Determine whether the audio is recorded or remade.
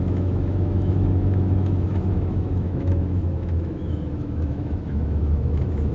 remade